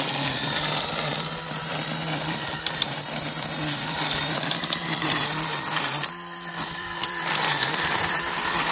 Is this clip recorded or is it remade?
remade